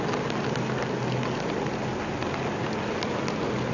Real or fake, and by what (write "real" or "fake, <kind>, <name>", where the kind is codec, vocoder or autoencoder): real